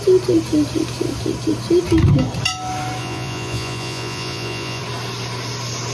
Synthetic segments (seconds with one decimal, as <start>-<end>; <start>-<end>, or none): 3.0-4.8